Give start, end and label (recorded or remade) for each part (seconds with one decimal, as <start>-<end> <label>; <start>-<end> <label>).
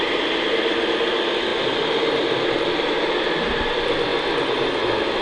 0.0-5.2 recorded